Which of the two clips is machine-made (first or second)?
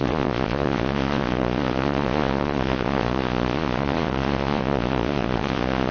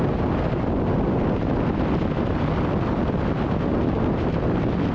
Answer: first